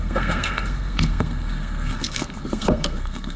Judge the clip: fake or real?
fake